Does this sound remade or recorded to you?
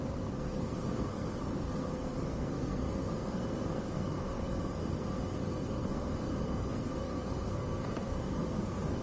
remade